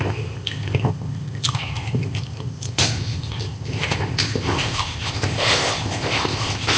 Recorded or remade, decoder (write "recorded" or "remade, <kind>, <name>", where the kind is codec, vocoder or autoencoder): remade, codec, ZipCodec